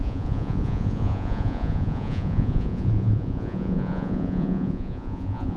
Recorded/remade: remade